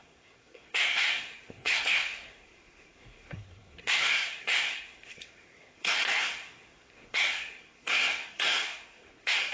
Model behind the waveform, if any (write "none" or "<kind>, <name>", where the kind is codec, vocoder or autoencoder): codec, SNAC